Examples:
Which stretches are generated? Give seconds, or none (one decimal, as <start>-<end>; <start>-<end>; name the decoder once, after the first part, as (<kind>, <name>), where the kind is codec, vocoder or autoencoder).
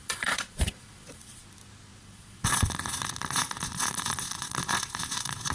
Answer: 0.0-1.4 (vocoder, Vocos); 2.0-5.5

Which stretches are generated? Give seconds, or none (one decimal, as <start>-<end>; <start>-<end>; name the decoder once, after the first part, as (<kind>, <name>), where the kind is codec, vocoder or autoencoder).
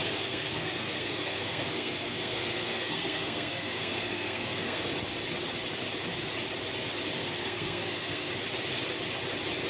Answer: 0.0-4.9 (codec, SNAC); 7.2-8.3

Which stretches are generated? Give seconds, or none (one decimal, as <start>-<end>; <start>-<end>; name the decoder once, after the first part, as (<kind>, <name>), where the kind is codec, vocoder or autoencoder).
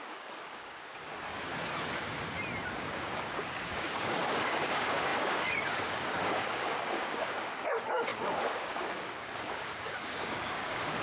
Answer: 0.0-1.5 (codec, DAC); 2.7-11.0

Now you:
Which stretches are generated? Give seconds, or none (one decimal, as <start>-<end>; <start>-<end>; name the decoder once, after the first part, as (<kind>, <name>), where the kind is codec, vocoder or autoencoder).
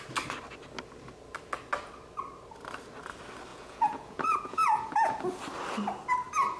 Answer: 3.5-5.2 (vocoder, Vocos)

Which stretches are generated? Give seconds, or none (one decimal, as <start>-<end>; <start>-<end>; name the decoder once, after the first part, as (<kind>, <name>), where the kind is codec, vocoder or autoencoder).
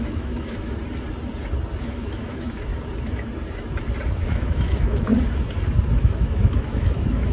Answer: 0.0-0.8 (autoencoder, DAC-VAE); 1.8-2.7; 4.1-5.1; 6.0-7.3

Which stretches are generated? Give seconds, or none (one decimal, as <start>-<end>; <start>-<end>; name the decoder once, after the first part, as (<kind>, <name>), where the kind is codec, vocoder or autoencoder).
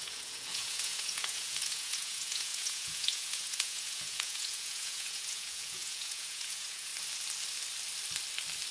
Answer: 0.0-6.9 (vocoder, Vocos)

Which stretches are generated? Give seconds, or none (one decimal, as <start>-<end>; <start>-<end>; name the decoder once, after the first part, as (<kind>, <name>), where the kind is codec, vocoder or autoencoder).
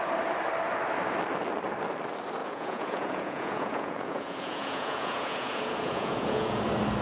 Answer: 2.4-6.6 (vocoder, Vocos)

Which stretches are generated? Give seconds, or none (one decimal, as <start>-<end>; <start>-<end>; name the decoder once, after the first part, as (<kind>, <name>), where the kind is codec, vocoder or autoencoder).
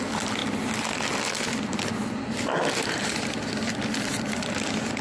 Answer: 2.8-3.7 (vocoder, BigVGAN v2)